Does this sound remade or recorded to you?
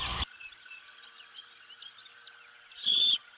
recorded